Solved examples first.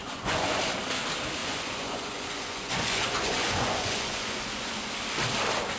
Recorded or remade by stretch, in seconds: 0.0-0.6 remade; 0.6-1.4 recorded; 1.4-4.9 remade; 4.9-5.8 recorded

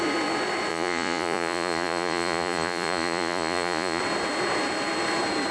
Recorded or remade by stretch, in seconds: 0.0-0.7 recorded; 0.7-4.0 remade; 4.0-5.5 recorded